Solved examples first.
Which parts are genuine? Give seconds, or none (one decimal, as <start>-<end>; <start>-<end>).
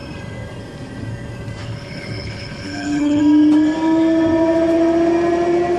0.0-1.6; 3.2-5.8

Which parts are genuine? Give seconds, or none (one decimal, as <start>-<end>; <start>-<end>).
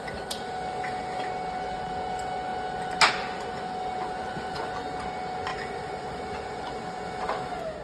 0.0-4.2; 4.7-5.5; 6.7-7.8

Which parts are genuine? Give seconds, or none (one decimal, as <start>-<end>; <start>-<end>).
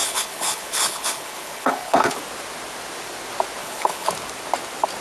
2.2-3.6; 4.1-5.0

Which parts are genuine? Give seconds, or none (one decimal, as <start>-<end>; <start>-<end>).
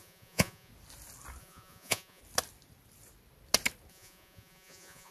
0.7-1.4; 2.2-3.9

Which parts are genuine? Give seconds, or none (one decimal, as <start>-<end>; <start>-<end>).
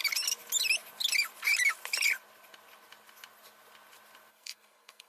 0.0-4.3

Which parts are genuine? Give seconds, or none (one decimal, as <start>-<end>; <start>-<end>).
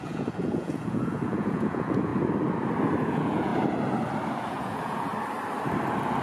2.1-3.1; 3.5-4.4; 5.1-6.2